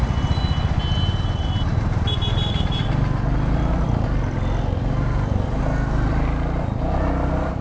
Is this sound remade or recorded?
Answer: recorded